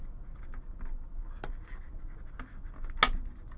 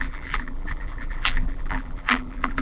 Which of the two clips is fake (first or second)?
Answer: second